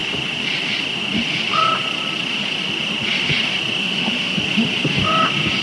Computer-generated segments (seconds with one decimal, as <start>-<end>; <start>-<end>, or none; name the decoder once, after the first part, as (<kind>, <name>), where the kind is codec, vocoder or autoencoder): 3.8-4.4 (autoencoder, DAC-VAE)